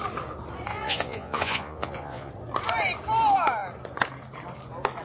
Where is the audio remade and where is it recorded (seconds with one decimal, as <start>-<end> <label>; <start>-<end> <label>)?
0.0-0.7 recorded; 0.7-2.3 remade; 2.3-5.0 recorded